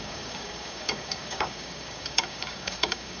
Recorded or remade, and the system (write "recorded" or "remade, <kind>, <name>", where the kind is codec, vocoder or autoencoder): remade, codec, DAC